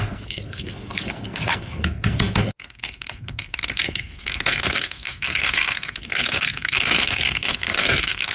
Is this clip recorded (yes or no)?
no